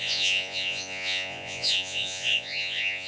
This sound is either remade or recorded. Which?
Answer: remade